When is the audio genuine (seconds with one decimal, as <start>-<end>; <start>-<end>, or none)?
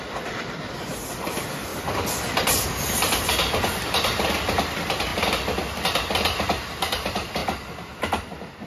1.7-3.2; 5.1-5.8; 7.4-8.0